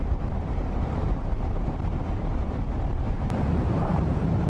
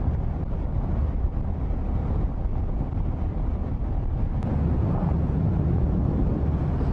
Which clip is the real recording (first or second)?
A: second